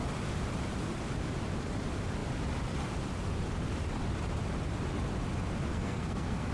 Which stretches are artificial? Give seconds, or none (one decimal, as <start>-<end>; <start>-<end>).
5.7-6.5